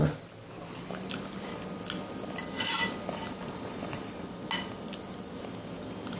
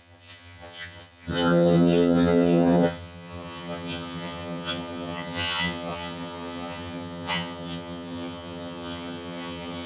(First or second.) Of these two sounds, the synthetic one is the second